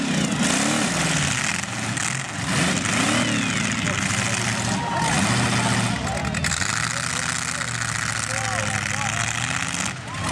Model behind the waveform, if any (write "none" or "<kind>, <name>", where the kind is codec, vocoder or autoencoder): none